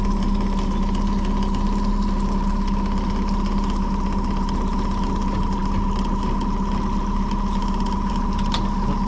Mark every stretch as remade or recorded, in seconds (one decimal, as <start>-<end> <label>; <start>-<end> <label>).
0.0-9.1 recorded